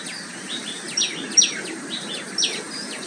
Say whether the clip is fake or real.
real